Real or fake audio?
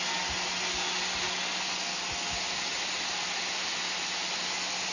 real